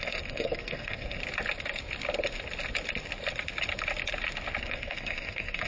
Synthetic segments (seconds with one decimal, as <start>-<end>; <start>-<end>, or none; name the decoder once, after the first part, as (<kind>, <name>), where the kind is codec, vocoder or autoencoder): 0.0-1.2 (codec, SNAC); 4.6-5.7